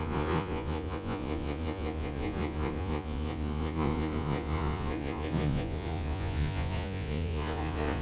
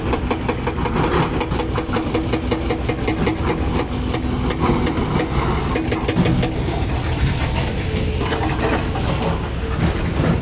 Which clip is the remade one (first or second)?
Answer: first